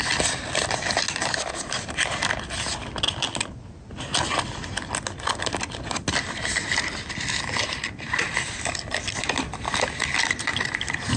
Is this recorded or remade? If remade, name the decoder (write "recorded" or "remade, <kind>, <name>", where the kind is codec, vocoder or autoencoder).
recorded